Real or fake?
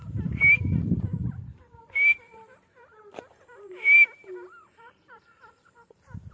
fake